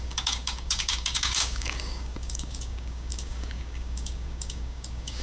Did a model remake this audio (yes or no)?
yes